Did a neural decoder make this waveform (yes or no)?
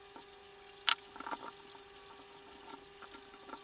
no